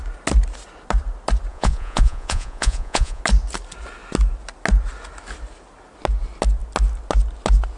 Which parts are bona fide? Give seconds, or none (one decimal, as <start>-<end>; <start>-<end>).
0.0-1.5; 3.2-7.8

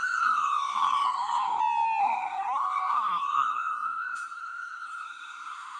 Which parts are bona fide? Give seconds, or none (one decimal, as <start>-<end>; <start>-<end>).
1.6-2.0

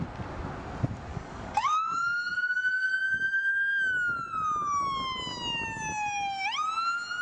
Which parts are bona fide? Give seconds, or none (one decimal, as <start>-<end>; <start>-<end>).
0.0-1.1; 2.9-7.2

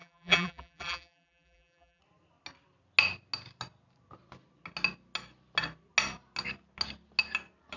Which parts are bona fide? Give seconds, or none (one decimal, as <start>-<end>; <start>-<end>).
2.0-7.8